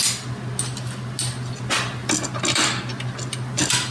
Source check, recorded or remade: recorded